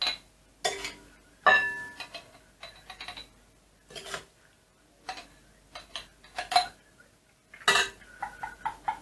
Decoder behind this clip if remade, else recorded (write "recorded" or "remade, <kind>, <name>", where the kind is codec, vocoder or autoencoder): recorded